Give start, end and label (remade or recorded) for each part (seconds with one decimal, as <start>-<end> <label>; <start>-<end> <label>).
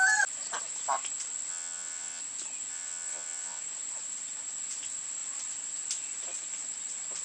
0.0-1.5 recorded; 1.5-2.2 remade; 2.2-2.7 recorded; 2.7-3.6 remade; 3.6-7.2 recorded